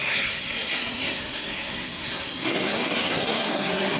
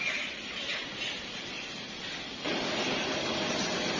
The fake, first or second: first